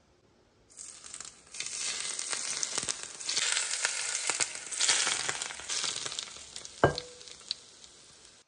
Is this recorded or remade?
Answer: recorded